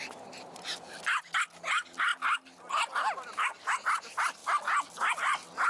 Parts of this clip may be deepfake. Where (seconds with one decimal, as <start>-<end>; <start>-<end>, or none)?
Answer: none